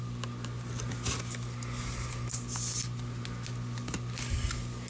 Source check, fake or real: real